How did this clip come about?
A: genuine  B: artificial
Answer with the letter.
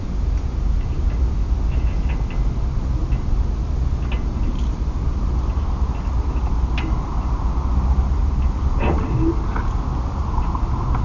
A